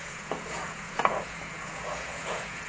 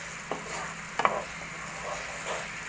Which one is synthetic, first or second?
first